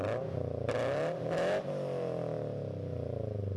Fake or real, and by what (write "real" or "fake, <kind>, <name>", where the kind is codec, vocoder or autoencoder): real